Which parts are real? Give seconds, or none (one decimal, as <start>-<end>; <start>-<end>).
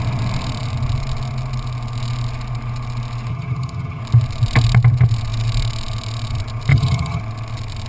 0.0-3.3; 4.0-6.7; 7.2-7.9